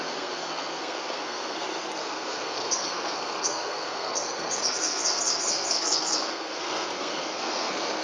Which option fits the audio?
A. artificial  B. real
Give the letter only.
A